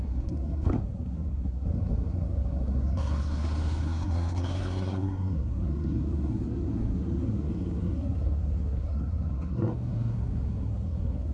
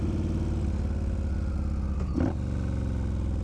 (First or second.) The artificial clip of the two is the first